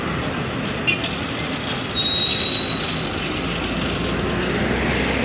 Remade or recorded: recorded